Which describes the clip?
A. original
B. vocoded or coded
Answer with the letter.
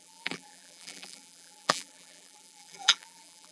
B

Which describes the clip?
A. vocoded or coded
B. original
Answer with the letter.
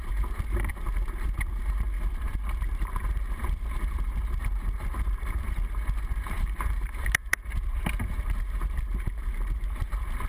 A